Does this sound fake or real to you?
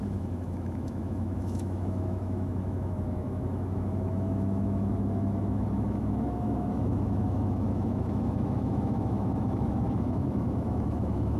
fake